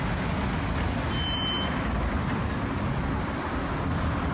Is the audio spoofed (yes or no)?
no